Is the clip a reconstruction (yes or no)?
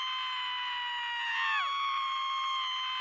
no